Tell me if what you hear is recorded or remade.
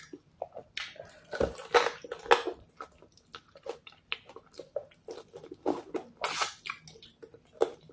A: recorded